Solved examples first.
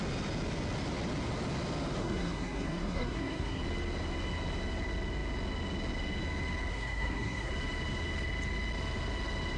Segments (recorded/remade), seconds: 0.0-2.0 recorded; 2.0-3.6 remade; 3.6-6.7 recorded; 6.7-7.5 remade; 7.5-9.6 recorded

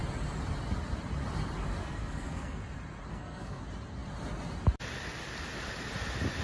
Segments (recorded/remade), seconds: 0.0-1.8 recorded; 1.8-2.6 remade; 2.6-3.1 recorded; 3.1-3.6 remade; 3.6-6.4 recorded

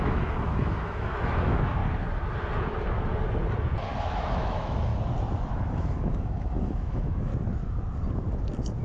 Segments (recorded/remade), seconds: 0.0-1.8 remade; 1.8-4.0 recorded; 4.0-4.9 remade; 4.9-5.5 recorded; 5.5-7.3 remade; 7.3-8.8 recorded

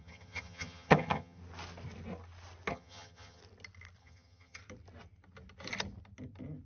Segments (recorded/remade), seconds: 0.0-1.4 remade; 1.4-2.7 recorded; 2.7-3.4 remade; 3.4-4.0 recorded; 4.0-4.6 remade; 4.6-6.7 recorded

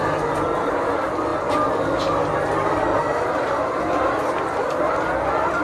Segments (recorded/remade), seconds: 0.0-2.9 recorded; 2.9-3.8 remade; 3.8-5.6 recorded

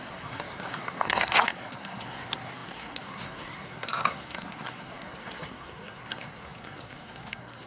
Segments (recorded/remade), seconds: 0.0-7.7 remade

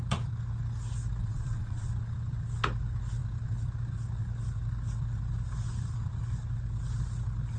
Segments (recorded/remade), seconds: 0.0-1.2 recorded; 1.2-1.9 remade; 1.9-7.6 recorded

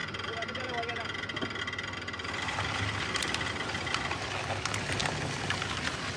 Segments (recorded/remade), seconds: 0.0-6.2 recorded